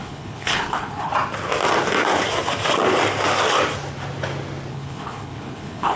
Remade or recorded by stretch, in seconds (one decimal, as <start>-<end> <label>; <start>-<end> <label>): 0.0-1.1 remade; 1.1-4.7 recorded; 4.7-6.0 remade